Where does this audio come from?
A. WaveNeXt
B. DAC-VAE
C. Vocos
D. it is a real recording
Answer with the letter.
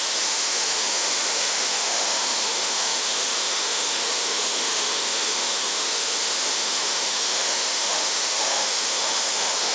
B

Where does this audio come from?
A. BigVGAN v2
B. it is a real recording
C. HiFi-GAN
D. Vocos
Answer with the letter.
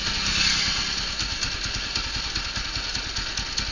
B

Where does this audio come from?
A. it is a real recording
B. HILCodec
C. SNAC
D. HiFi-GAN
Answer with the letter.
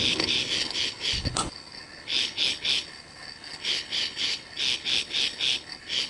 B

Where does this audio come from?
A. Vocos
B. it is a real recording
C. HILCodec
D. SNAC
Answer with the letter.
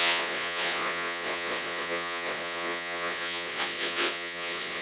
A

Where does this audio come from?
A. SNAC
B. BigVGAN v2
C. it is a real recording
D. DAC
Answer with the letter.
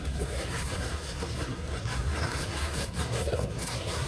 A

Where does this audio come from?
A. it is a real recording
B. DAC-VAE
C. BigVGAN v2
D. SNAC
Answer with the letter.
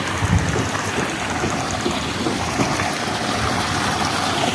A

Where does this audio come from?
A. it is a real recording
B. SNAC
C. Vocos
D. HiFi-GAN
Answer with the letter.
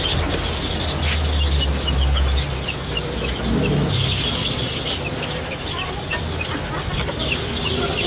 A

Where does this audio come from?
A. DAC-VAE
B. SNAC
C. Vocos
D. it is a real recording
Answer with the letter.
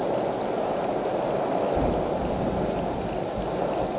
D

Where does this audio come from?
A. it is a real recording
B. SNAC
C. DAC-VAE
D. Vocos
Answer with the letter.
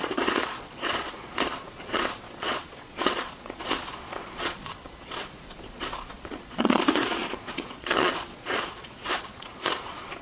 D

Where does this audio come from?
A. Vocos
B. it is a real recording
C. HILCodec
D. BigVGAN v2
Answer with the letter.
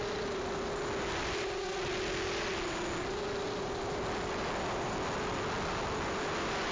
B